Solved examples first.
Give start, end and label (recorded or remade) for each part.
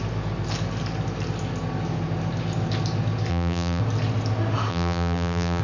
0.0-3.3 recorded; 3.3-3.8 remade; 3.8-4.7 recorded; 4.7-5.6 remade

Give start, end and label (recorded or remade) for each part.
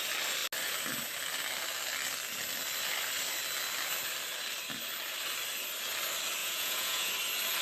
0.0-6.4 recorded; 6.4-7.1 remade; 7.1-7.6 recorded